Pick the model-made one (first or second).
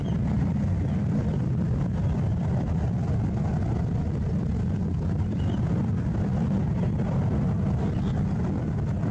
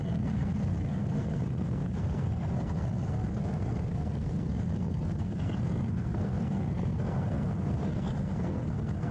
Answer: second